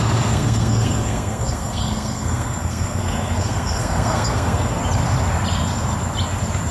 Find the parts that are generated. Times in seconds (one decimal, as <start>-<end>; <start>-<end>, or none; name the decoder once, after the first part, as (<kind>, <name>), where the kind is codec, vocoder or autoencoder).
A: 0.0-4.8 (codec, SNAC)